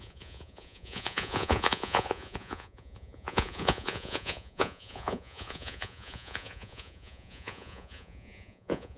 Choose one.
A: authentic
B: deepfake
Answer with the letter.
B